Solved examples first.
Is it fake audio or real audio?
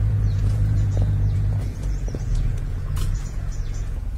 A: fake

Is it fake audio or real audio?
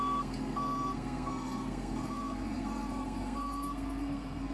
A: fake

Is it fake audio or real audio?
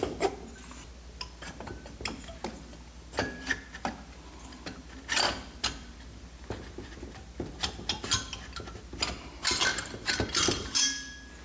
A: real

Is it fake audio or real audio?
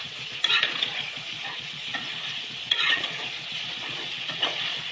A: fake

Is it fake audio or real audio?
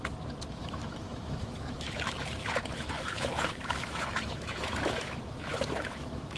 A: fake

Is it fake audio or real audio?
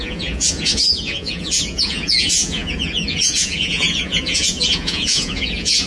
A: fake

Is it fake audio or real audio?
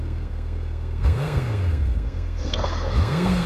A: fake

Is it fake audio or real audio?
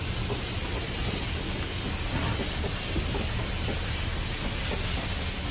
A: real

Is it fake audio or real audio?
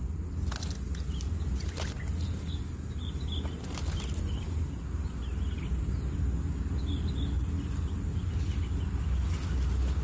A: real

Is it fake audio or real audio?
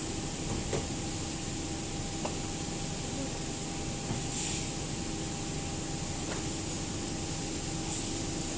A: real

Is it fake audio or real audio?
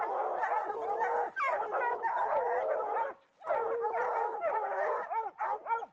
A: real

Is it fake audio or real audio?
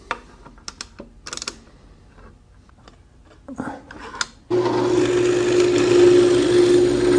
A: real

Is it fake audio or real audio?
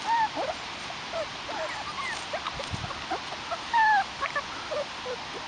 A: real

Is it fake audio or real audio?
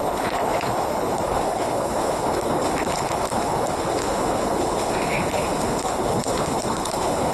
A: fake